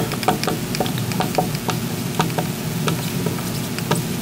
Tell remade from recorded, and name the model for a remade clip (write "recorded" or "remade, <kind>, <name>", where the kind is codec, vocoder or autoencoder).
recorded